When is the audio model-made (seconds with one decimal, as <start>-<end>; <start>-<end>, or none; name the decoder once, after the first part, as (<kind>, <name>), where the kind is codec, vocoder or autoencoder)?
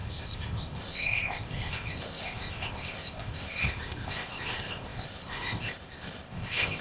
0.0-6.8 (codec, ZipCodec)